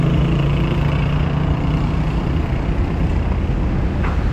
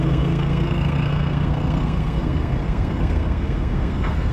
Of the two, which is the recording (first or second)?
first